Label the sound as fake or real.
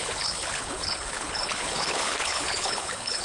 fake